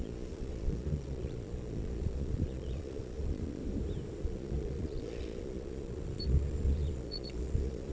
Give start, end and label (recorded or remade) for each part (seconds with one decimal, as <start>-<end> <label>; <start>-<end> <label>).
0.0-3.6 remade; 3.6-4.2 recorded; 4.2-7.9 remade

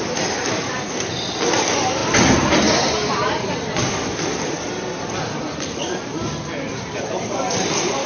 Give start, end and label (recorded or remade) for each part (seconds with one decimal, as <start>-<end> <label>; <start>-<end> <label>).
0.0-8.1 recorded